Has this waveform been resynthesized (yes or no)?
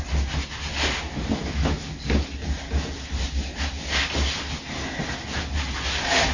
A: no